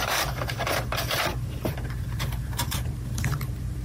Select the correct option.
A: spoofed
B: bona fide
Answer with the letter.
A